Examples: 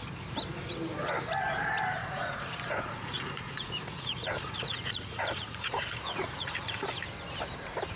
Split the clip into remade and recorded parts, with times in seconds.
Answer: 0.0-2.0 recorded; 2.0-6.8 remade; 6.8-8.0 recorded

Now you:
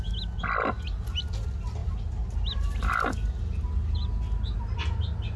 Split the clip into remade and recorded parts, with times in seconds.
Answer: 0.0-5.4 recorded

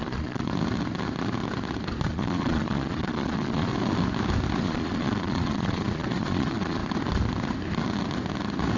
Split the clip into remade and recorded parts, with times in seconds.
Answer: 0.0-0.5 remade; 0.5-2.1 recorded; 2.1-3.7 remade; 3.7-4.6 recorded; 4.6-6.8 remade; 6.8-8.8 recorded